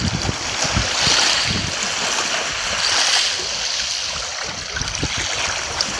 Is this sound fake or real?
real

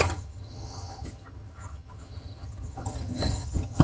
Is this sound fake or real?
fake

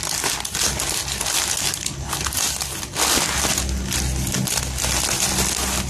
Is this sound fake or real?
real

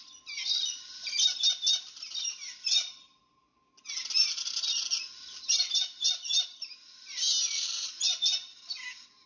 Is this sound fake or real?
real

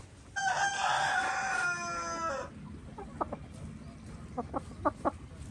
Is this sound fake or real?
real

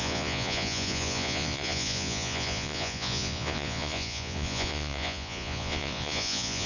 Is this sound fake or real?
fake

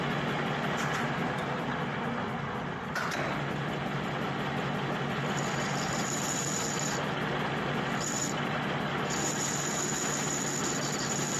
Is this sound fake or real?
real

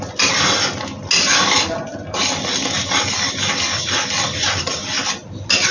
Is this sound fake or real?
real